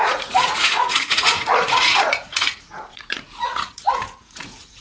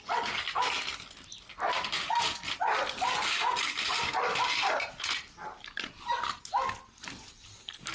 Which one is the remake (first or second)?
first